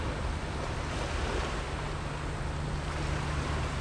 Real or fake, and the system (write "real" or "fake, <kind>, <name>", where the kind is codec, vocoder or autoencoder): real